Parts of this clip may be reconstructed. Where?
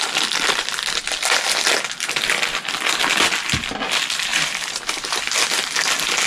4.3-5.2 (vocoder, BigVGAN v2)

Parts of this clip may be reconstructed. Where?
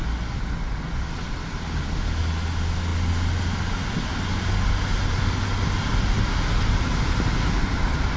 none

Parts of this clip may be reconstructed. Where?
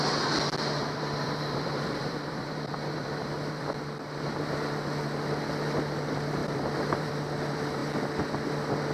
0.8-3.8 (vocoder, BigVGAN v2); 6.4-7.1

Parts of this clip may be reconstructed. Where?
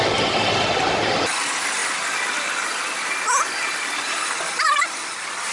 1.8-3.1 (vocoder, BigVGAN v2)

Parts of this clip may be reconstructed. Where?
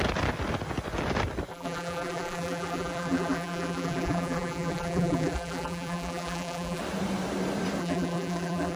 1.5-6.8 (vocoder, BigVGAN v2); 7.8-8.8